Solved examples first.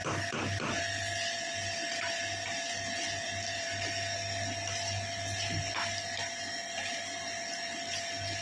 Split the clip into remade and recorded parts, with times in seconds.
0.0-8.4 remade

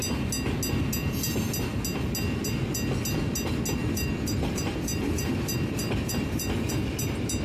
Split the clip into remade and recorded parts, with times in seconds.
0.0-3.8 recorded; 3.8-6.7 remade; 6.7-7.4 recorded

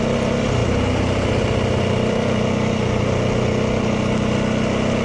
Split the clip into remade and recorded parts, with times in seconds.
0.0-0.6 recorded; 0.6-3.6 remade; 3.6-5.0 recorded

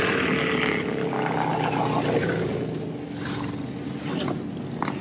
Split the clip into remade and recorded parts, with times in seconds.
0.0-5.0 recorded

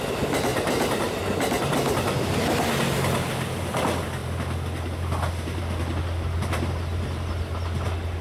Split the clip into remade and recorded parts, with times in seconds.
0.0-0.5 recorded; 0.5-1.2 remade; 1.2-8.2 recorded

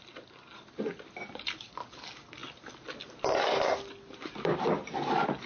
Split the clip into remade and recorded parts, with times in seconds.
0.0-4.5 recorded; 4.5-5.5 remade

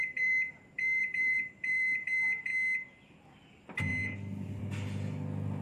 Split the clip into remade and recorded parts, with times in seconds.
0.0-2.5 remade; 2.5-3.2 recorded; 3.2-3.9 remade; 3.9-4.6 recorded; 4.6-5.6 remade

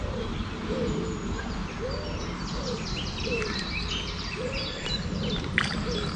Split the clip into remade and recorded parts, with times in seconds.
0.0-1.6 remade; 1.6-3.2 recorded; 3.2-6.2 remade